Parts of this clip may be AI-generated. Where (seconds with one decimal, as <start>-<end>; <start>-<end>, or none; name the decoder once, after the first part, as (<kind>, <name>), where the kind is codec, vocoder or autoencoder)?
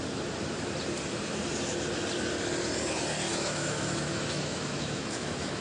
3.3-5.6 (autoencoder, DAC-VAE)